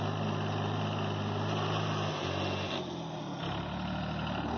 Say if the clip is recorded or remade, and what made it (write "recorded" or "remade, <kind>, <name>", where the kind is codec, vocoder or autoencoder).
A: recorded